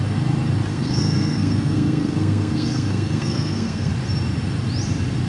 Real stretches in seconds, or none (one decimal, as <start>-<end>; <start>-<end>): 0.0-0.7; 3.9-5.3

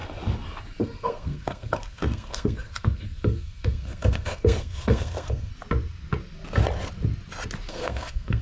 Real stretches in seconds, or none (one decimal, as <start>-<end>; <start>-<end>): 0.0-0.8; 5.5-7.7